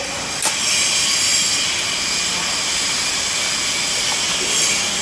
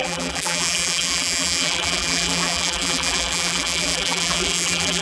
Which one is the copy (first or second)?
second